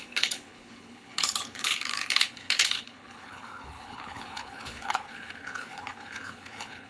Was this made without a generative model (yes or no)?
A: no